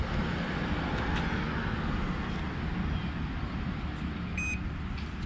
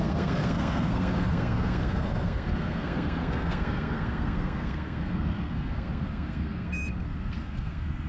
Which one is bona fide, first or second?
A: first